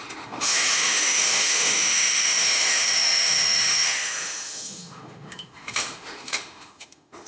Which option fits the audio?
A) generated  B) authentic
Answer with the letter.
A